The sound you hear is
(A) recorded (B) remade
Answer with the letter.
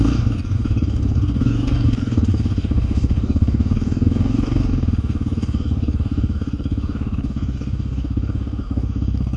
B